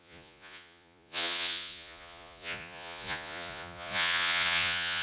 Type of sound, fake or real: fake